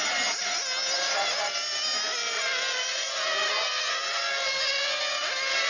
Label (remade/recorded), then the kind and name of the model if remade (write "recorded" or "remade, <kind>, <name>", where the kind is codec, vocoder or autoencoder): recorded